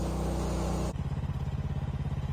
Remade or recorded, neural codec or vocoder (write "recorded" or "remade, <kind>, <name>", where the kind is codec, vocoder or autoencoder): recorded